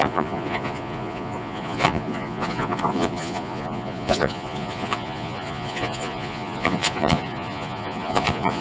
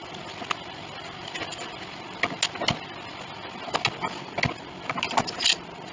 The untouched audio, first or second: second